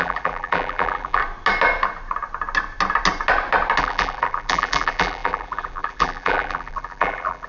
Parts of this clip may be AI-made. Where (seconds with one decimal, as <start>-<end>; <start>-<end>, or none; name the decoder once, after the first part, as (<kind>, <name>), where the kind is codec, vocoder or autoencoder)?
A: 0.0-1.2 (vocoder, BigVGAN v2); 3.8-7.5